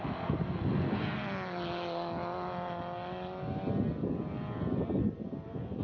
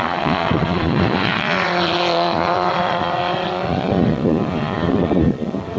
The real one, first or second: first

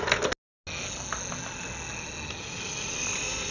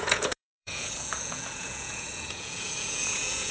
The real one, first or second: first